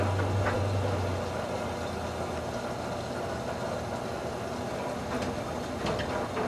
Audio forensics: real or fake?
real